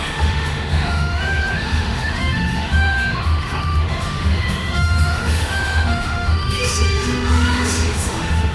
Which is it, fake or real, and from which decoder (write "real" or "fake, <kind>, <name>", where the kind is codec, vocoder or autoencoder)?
fake, autoencoder, DAC-VAE